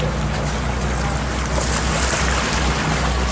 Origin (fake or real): real